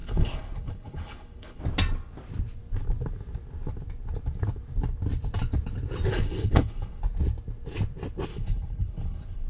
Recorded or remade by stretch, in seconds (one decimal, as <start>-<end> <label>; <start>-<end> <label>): 0.0-1.6 remade; 1.6-6.1 recorded; 6.1-7.0 remade; 7.0-8.3 recorded; 8.3-9.5 remade

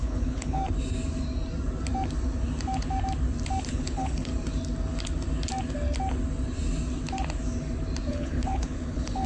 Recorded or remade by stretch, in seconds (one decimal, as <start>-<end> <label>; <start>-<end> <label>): 0.0-0.6 remade; 0.6-3.7 recorded; 3.7-4.3 remade; 4.3-8.1 recorded; 8.1-9.3 remade

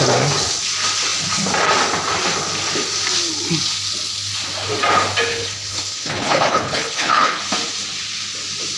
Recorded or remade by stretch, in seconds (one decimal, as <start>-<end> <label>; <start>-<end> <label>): 0.0-5.3 recorded; 5.3-7.4 remade; 7.4-8.8 recorded

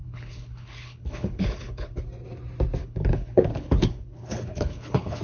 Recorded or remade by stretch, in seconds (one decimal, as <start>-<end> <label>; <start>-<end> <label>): 0.0-2.0 remade; 2.0-2.8 recorded; 2.8-5.2 remade